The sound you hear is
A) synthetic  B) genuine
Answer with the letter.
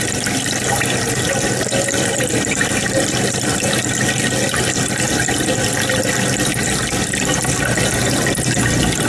B